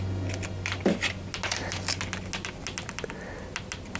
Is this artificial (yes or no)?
no